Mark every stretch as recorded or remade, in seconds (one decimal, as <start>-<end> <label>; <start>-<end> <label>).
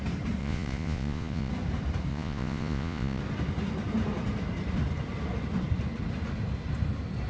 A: 0.0-0.4 recorded; 0.4-1.5 remade; 1.5-2.1 recorded; 2.1-3.2 remade; 3.2-7.3 recorded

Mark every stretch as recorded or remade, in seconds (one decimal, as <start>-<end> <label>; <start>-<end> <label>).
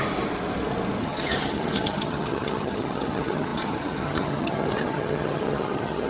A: 0.0-1.0 recorded; 1.0-6.1 remade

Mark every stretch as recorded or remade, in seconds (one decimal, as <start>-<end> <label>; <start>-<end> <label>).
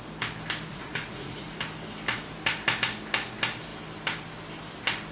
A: 0.0-0.7 recorded; 0.7-1.6 remade; 1.6-5.1 recorded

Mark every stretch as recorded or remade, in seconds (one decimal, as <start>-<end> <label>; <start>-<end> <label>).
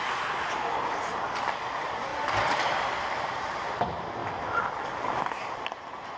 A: 0.0-2.1 recorded; 2.1-3.7 remade; 3.7-4.2 recorded; 4.2-6.2 remade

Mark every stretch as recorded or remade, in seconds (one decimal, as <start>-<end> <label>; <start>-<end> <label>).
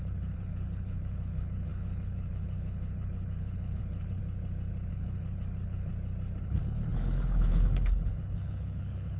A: 0.0-4.2 remade; 4.2-4.9 recorded; 4.9-5.9 remade; 5.9-6.4 recorded; 6.4-9.2 remade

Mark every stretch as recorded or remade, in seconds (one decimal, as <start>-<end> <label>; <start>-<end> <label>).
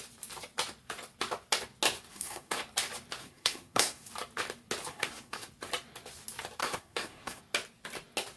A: 0.0-2.1 recorded; 2.1-2.6 remade; 2.6-3.2 recorded; 3.2-4.1 remade; 4.1-4.9 recorded; 4.9-5.5 remade; 5.5-6.6 recorded; 6.6-7.4 remade; 7.4-8.4 recorded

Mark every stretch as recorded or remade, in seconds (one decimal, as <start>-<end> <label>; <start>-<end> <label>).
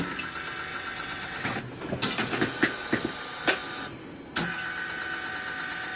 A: 0.0-0.7 recorded; 0.7-1.6 remade; 1.6-6.0 recorded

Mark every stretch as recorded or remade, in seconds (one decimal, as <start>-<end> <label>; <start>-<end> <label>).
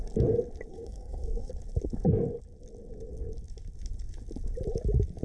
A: 0.0-0.7 recorded; 0.7-1.5 remade; 1.5-5.2 recorded